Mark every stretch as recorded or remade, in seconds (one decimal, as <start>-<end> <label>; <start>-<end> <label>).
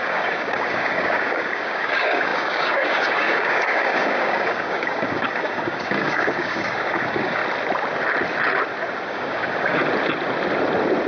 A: 0.0-7.4 remade; 7.4-9.1 recorded; 9.1-9.8 remade; 9.8-11.1 recorded